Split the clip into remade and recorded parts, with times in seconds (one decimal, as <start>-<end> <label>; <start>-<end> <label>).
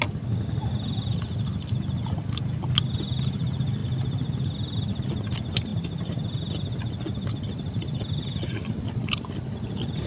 0.0-10.1 recorded